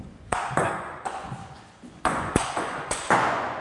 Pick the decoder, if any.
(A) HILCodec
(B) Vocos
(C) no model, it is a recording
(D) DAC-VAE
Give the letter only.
B